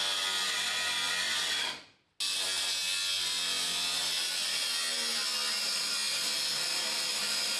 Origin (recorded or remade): recorded